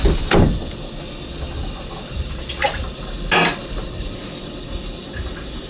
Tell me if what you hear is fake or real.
real